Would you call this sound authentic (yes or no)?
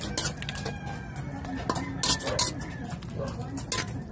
yes